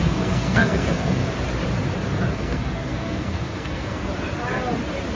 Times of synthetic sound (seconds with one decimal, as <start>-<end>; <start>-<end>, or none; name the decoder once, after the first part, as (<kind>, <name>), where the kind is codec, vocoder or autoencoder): 0.0-1.2 (codec, SNAC); 2.3-4.1